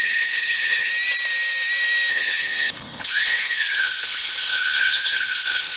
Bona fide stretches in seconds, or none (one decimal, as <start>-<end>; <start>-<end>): 0.9-2.1